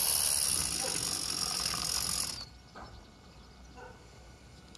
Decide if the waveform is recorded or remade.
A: recorded